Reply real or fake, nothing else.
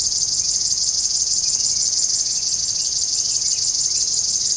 real